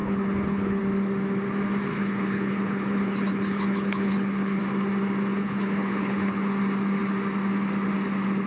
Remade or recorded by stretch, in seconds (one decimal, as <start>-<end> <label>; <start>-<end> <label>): 0.0-0.8 remade; 0.8-1.9 recorded; 1.9-4.6 remade; 4.6-5.3 recorded; 5.3-6.5 remade; 6.5-8.5 recorded